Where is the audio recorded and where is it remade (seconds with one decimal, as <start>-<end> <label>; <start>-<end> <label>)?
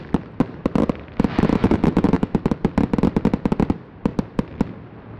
0.0-1.5 recorded; 1.5-2.4 remade; 2.4-5.2 recorded